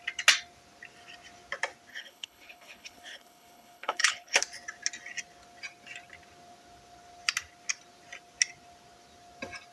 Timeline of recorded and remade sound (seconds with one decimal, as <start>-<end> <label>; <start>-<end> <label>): 0.0-1.9 recorded; 1.9-4.4 remade; 4.4-9.7 recorded